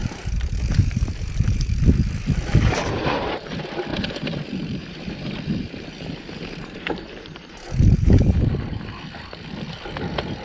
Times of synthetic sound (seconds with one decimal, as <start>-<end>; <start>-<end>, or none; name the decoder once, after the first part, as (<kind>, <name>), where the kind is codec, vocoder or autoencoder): 0.0-1.8 (vocoder, BigVGAN v2); 3.9-8.4